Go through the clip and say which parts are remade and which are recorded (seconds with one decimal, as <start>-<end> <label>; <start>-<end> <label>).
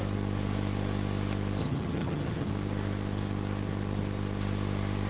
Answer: 0.0-1.6 recorded; 1.6-2.5 remade; 2.5-5.1 recorded